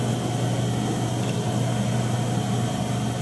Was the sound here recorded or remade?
recorded